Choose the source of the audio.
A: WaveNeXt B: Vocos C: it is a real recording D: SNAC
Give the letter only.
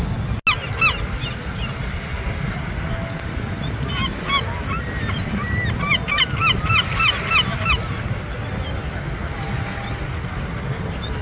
C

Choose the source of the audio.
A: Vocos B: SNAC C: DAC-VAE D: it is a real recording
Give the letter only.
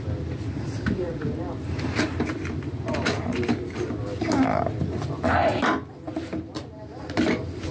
D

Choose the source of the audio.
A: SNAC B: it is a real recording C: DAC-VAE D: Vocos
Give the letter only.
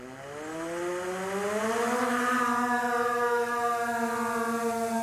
B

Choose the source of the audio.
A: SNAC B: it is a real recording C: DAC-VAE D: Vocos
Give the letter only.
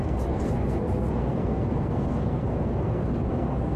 A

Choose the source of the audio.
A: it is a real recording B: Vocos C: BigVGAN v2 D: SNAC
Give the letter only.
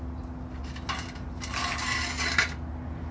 A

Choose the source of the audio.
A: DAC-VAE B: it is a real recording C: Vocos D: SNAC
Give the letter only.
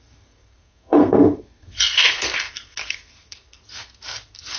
D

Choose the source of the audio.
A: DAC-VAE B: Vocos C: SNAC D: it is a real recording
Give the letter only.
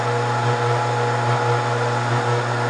D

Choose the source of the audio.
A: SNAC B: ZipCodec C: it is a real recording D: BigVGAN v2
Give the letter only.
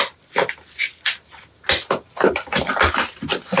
C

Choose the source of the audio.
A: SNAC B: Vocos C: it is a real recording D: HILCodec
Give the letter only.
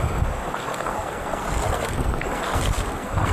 A